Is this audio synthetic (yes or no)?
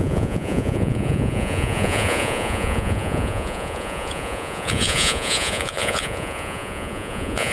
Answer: yes